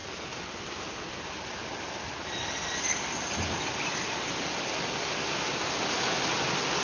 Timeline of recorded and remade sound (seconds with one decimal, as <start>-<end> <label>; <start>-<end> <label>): 0.0-6.8 recorded